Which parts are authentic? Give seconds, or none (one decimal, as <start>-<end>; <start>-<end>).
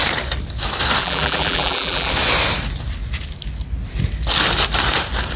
0.0-1.0; 2.1-5.4